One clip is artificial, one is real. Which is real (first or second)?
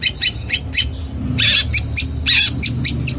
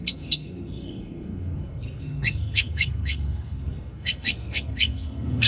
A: first